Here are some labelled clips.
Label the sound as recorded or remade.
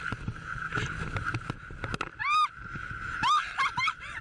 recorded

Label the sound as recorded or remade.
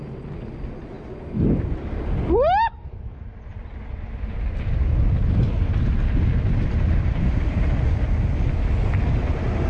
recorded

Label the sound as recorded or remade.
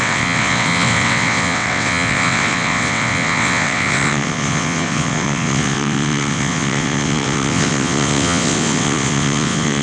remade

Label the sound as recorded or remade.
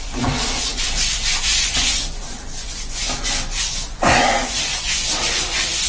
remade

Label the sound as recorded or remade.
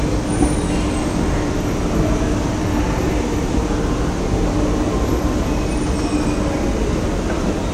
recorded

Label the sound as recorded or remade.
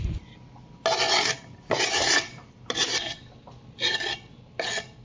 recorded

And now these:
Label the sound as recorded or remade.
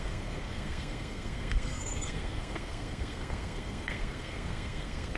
remade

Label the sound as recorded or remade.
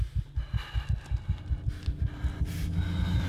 recorded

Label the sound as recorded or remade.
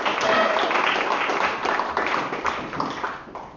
recorded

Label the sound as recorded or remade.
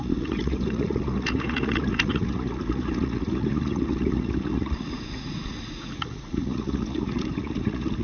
remade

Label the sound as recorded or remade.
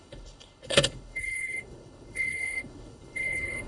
remade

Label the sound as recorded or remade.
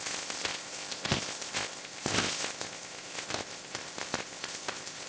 remade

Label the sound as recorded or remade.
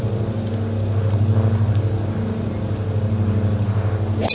recorded